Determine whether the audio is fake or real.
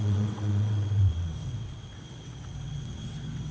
fake